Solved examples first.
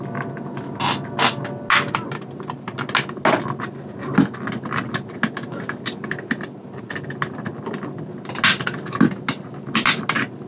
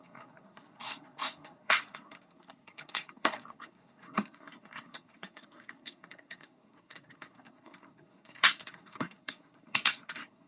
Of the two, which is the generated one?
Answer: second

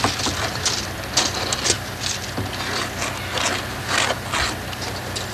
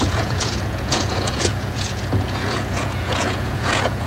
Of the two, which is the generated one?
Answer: second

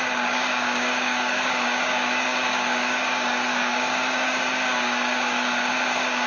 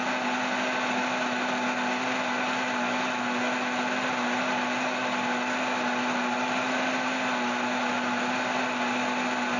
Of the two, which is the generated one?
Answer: first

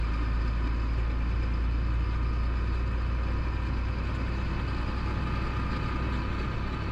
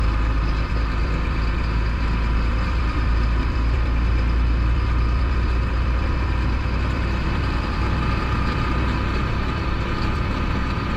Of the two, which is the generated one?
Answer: second